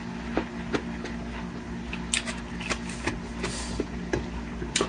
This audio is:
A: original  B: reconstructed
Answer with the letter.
A